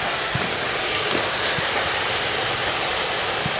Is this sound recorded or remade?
recorded